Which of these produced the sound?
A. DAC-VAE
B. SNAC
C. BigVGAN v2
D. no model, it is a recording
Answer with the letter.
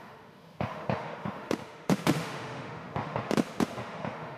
A